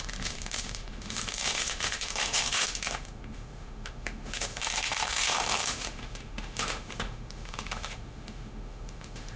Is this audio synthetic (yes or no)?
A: yes